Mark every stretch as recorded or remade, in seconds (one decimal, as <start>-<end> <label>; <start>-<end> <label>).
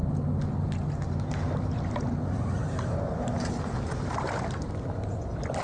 0.0-5.6 recorded